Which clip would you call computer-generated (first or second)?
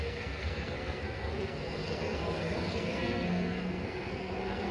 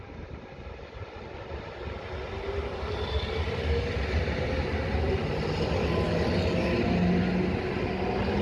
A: first